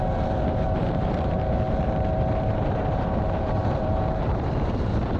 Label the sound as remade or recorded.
remade